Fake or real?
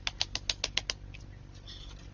real